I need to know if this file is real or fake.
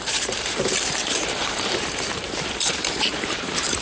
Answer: fake